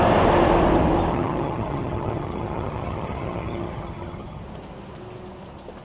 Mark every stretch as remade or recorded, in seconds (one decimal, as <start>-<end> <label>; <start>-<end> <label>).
0.0-1.1 recorded; 1.1-4.4 remade; 4.4-5.8 recorded